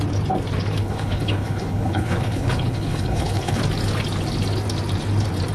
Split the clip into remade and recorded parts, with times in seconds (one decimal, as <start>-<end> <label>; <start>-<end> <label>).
0.0-0.8 recorded; 0.8-3.6 remade; 3.6-5.5 recorded